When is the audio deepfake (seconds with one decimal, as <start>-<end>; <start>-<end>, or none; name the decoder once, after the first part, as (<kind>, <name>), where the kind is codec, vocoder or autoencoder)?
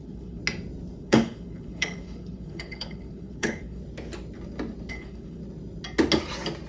0.0-0.4 (codec, HILCodec); 1.0-3.8; 4.9-5.4